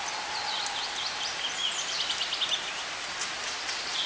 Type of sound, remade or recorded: recorded